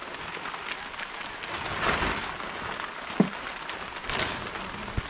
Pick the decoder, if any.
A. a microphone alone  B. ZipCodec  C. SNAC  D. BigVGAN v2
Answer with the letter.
A